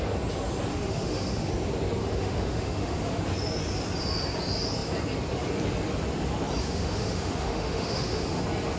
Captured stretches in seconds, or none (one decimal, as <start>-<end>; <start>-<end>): 0.0-0.7; 1.5-2.0; 3.2-6.6; 8.4-8.8